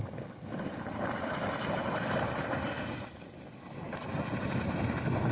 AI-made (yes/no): no